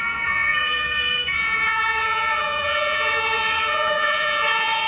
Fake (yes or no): yes